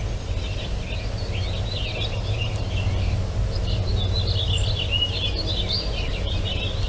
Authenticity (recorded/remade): recorded